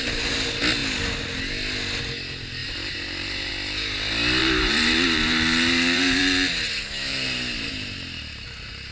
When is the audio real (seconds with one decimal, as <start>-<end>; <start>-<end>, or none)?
0.0-2.6; 3.5-4.4; 6.2-7.1; 7.7-8.9